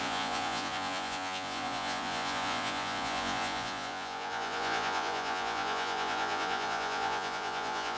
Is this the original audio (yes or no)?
no